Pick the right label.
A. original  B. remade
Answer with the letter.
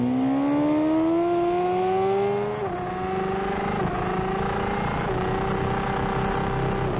A